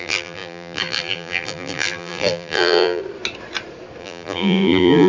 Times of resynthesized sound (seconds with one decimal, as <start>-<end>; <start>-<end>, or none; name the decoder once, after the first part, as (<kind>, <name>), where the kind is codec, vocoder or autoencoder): 0.0-3.0 (vocoder, BigVGAN v2); 4.0-5.1